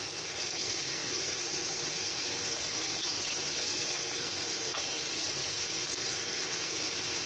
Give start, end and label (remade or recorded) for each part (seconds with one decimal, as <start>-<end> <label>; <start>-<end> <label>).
0.0-7.3 remade